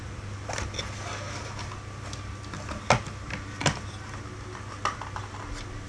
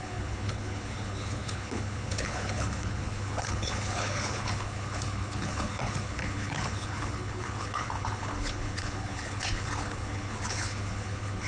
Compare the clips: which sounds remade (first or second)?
second